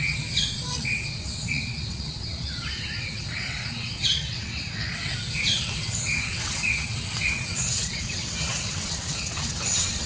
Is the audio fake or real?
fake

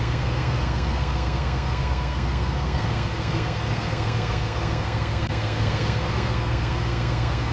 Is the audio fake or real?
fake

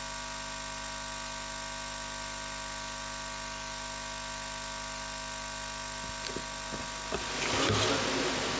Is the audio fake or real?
real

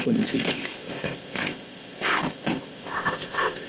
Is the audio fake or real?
fake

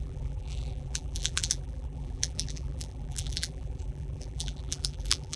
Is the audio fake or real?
fake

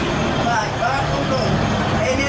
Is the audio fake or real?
real